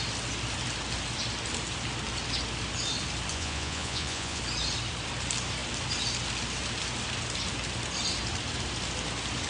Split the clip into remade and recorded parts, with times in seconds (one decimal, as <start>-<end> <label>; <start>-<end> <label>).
0.0-3.3 recorded; 3.3-4.4 remade; 4.4-9.5 recorded

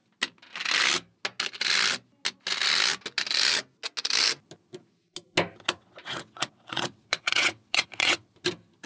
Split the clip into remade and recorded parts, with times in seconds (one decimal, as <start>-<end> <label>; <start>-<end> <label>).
0.0-5.8 recorded; 5.8-8.3 remade; 8.3-8.9 recorded

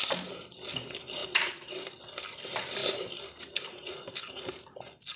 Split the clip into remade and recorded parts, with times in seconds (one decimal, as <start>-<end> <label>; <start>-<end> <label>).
0.0-5.2 recorded